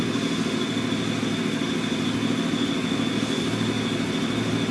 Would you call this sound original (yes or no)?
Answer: yes